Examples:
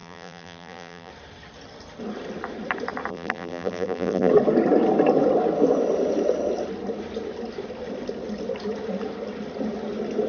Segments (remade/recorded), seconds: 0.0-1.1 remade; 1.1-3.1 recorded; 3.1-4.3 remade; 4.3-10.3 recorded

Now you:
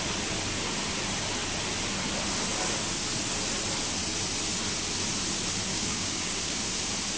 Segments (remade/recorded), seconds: 0.0-5.7 recorded; 5.7-6.6 remade; 6.6-7.2 recorded

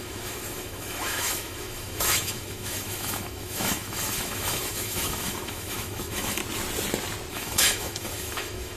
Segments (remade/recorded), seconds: 0.0-6.4 remade; 6.4-7.3 recorded; 7.3-8.8 remade

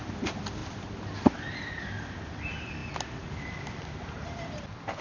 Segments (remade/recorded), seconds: 0.0-5.0 recorded